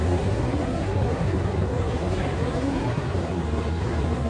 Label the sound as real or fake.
fake